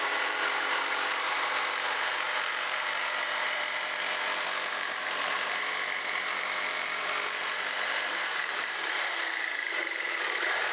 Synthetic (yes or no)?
yes